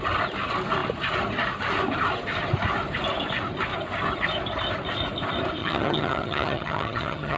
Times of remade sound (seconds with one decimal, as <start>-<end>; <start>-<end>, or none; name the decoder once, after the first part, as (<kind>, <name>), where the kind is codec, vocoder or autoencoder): 5.6-7.4 (vocoder, HiFi-GAN)